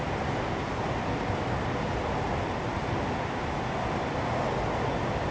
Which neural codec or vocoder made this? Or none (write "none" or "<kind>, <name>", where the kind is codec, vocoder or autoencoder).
none